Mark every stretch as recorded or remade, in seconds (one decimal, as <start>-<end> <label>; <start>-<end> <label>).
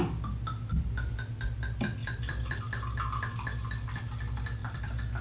0.0-2.0 recorded; 2.0-2.6 remade; 2.6-4.6 recorded; 4.6-5.2 remade